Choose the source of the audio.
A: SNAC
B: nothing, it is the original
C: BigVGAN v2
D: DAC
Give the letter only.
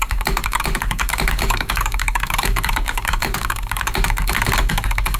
D